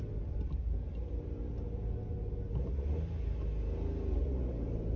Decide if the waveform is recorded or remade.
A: recorded